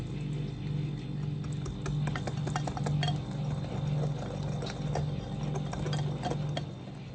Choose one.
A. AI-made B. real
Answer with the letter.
B